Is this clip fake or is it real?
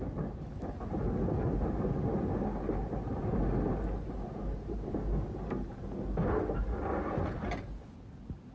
real